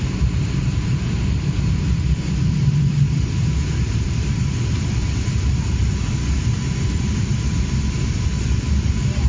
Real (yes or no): no